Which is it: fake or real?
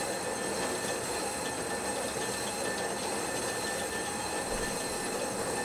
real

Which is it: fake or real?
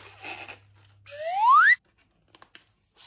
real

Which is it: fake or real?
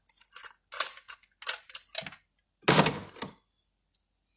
real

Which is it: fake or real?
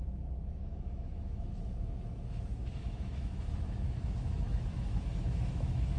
fake